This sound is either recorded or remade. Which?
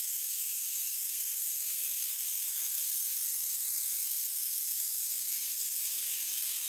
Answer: remade